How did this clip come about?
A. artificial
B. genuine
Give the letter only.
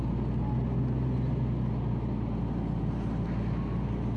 B